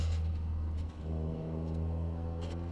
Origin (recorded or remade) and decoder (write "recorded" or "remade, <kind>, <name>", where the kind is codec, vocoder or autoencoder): remade, codec, SNAC